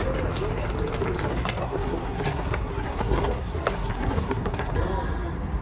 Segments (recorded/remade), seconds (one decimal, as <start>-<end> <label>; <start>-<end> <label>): 0.0-1.3 recorded; 1.3-4.7 remade; 4.7-5.6 recorded